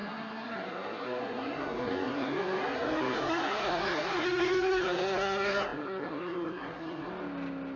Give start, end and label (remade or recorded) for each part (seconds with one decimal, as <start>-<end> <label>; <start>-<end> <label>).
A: 0.0-7.1 remade; 7.1-7.8 recorded